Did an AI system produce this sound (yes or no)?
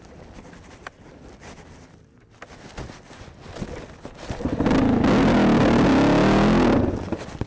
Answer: no